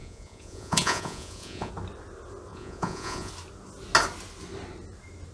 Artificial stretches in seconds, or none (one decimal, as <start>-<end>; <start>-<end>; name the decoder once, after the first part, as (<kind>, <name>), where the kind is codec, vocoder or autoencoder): 0.0-1.7 (vocoder, Vocos); 2.5-3.3